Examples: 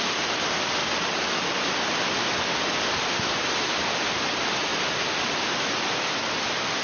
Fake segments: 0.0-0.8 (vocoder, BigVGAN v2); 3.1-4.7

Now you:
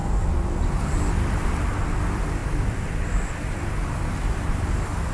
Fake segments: 0.0-0.6 (vocoder, BigVGAN v2); 2.4-3.1